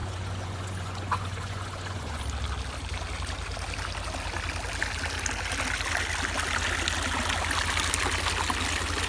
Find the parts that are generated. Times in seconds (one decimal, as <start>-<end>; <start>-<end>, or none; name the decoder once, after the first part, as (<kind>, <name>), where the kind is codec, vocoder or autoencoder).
0.0-2.2 (vocoder, Vocos)